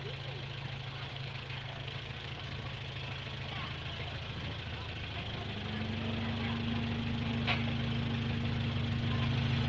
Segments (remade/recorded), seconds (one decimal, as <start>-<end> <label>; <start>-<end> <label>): 0.0-1.1 recorded; 1.1-2.4 remade; 2.4-9.7 recorded